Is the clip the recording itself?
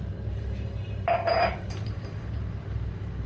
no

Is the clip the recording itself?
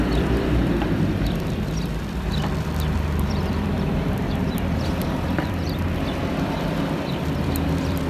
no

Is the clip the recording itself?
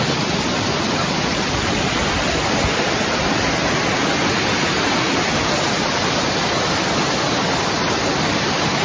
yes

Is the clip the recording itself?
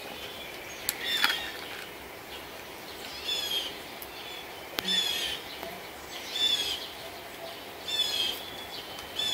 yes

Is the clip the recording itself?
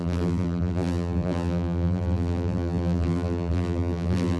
no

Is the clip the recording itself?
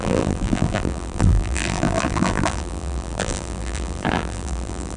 no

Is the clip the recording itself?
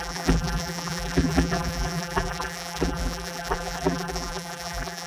no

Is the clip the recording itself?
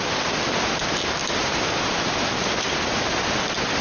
yes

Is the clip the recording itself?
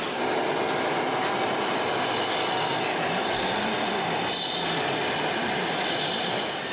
yes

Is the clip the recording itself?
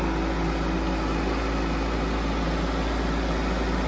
yes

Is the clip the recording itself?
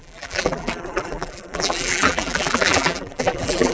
no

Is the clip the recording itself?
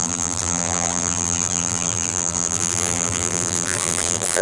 no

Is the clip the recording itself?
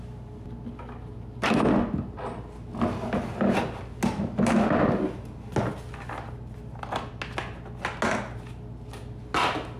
yes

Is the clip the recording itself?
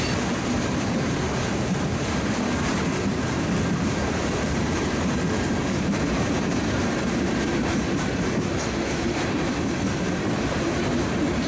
no